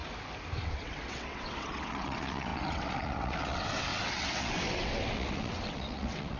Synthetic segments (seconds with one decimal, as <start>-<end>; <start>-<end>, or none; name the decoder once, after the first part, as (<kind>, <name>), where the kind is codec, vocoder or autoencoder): 0.6-6.4 (vocoder, WaveNeXt)